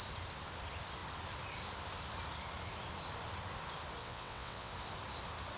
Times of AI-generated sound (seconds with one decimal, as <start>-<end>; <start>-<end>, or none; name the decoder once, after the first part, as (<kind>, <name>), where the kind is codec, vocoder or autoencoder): 4.0-4.7 (vocoder, WaveNeXt)